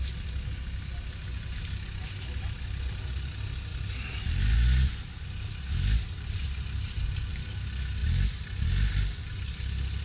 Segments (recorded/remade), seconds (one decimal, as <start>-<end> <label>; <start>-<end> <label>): 0.0-10.0 recorded